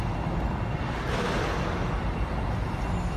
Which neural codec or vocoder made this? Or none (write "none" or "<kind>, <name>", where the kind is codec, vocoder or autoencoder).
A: none